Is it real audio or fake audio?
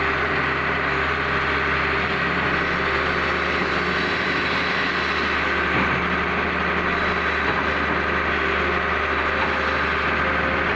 real